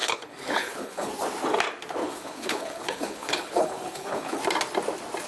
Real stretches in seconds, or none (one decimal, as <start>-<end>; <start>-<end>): 1.1-2.0; 4.4-5.3